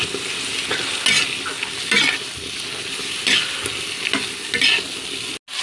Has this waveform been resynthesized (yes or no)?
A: no